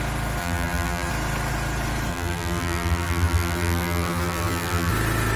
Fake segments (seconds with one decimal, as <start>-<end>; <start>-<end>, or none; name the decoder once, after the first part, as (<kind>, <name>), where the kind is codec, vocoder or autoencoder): 0.4-1.1 (vocoder, BigVGAN v2); 2.1-4.9